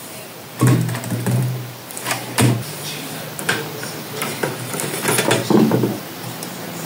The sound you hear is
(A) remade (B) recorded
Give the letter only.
A